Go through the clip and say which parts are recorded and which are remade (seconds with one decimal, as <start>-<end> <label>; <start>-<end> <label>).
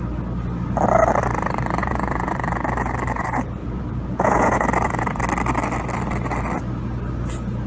0.0-1.8 recorded; 1.8-2.3 remade; 2.3-3.6 recorded; 3.6-5.2 remade; 5.2-7.7 recorded